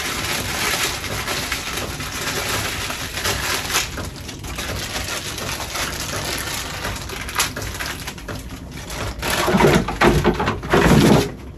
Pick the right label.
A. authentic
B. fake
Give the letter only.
A